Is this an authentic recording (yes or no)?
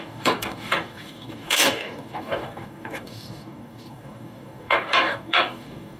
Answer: no